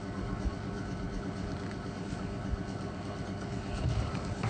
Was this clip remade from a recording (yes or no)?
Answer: yes